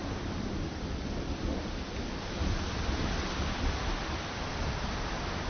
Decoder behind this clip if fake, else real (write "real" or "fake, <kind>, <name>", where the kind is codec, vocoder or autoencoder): fake, vocoder, BigVGAN v2